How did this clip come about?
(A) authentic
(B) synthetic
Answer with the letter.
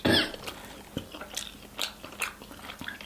A